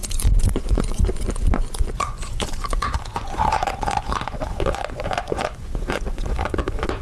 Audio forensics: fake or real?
fake